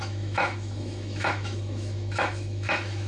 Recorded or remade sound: remade